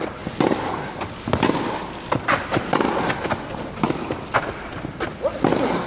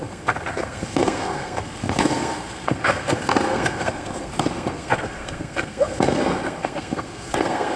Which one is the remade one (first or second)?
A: second